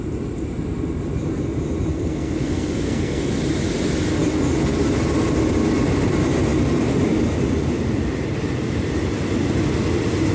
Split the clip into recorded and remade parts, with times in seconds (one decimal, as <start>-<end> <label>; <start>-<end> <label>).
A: 0.0-1.9 recorded; 1.9-3.3 remade; 3.3-10.3 recorded

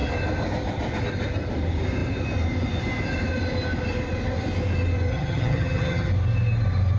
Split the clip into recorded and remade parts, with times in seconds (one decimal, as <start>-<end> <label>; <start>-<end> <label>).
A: 0.0-5.1 recorded; 5.1-6.1 remade; 6.1-7.0 recorded

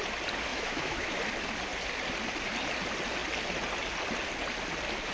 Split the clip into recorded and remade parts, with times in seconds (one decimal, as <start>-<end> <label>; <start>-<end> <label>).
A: 0.0-0.5 recorded; 0.5-1.2 remade; 1.2-5.1 recorded

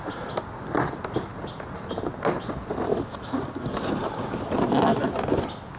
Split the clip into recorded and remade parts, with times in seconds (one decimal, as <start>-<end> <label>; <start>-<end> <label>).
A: 0.0-5.8 recorded

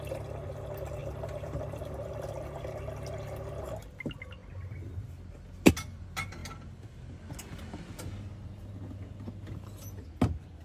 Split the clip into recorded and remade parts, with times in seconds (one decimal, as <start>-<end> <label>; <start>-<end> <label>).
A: 0.0-1.0 recorded; 1.0-1.8 remade; 1.8-10.6 recorded

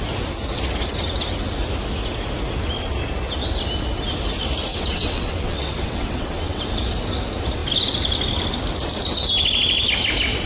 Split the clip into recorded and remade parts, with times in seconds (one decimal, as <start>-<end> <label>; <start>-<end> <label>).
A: 0.0-4.7 recorded; 4.7-6.6 remade; 6.6-10.5 recorded